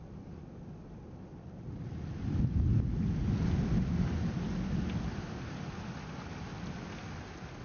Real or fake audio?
real